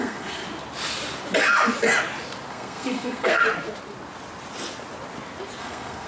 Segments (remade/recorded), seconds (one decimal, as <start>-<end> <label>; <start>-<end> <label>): 0.0-0.4 remade; 0.4-2.5 recorded; 2.5-3.4 remade; 3.4-5.6 recorded; 5.6-6.1 remade